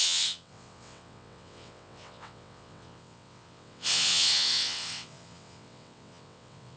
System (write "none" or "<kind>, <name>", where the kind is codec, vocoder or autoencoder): vocoder, WaveNeXt